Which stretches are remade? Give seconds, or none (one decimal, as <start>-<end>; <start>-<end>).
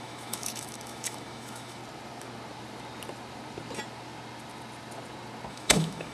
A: 0.0-1.8; 5.5-6.1